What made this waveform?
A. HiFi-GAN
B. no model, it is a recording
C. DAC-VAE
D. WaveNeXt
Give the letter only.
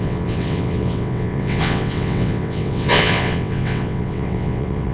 D